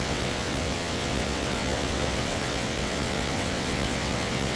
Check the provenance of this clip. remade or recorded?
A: remade